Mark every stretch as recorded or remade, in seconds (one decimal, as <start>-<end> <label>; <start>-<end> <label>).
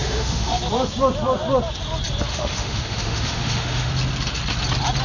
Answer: 0.0-0.6 remade; 0.6-2.3 recorded; 2.3-3.9 remade; 3.9-5.0 recorded